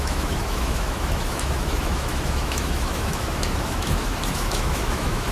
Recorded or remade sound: remade